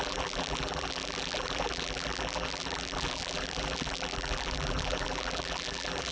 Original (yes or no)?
no